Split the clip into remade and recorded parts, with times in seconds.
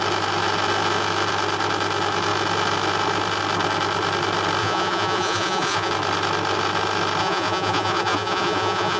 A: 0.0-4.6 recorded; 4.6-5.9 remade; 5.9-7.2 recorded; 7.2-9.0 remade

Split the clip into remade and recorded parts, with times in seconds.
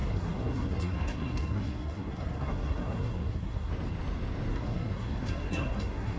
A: 0.0-3.7 remade; 3.7-4.5 recorded; 4.5-6.2 remade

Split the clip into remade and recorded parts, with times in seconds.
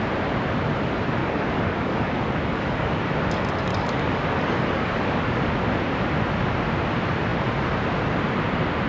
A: 0.0-1.2 recorded; 1.2-3.0 remade; 3.0-3.7 recorded; 3.7-5.5 remade; 5.5-8.9 recorded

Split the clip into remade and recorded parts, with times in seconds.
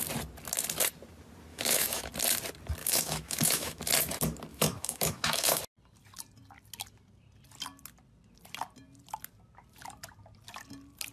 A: 0.0-1.5 recorded; 1.5-2.1 remade; 2.1-2.8 recorded; 2.8-3.8 remade; 3.8-4.5 recorded; 4.5-5.6 remade; 5.6-11.1 recorded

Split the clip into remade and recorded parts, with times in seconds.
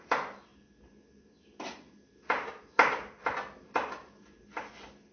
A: 0.0-5.1 recorded